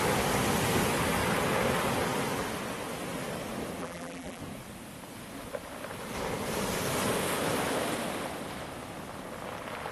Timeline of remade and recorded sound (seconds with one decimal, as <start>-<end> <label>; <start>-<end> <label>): 0.0-3.8 recorded; 3.8-4.4 remade; 4.4-9.9 recorded